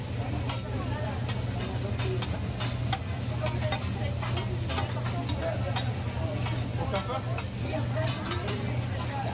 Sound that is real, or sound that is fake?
real